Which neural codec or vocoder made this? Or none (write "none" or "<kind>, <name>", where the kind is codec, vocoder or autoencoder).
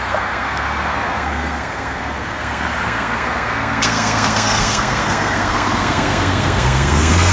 codec, SNAC